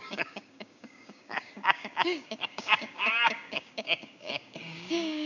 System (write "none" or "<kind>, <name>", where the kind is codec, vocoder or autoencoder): codec, DAC